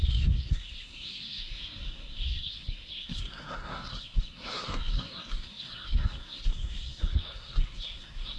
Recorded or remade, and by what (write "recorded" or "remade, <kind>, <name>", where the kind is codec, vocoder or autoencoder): remade, codec, SNAC